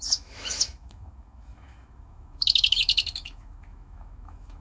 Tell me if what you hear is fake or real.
fake